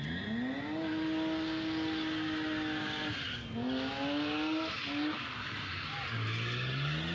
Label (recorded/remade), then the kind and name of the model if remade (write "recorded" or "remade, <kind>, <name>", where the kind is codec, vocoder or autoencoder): recorded